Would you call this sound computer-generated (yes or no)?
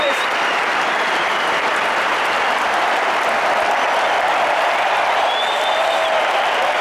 yes